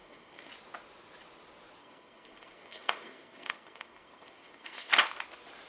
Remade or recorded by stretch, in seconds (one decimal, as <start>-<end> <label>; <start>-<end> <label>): 0.0-0.5 remade; 0.5-1.8 recorded; 1.8-4.9 remade; 4.9-5.7 recorded